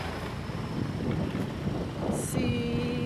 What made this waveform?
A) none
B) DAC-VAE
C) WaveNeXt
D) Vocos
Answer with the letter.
A